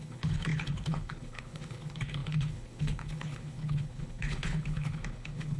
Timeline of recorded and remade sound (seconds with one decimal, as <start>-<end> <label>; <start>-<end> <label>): 0.0-5.6 remade